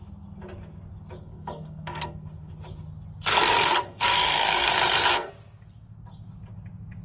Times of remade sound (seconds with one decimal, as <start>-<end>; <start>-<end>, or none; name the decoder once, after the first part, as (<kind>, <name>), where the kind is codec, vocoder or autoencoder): 1.2-2.5 (codec, SNAC); 3.3-5.3